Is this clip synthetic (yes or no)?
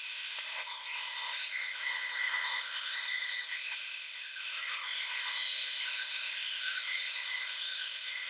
yes